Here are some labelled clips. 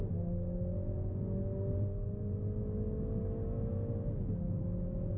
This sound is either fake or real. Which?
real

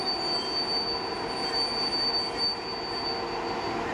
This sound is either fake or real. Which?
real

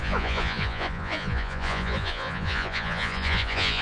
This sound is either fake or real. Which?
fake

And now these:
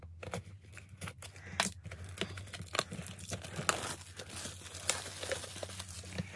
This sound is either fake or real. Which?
real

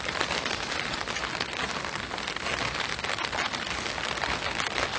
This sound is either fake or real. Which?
real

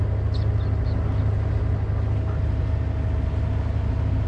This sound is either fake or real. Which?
real